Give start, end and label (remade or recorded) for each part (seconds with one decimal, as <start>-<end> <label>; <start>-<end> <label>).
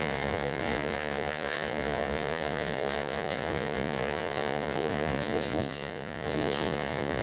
0.0-7.2 remade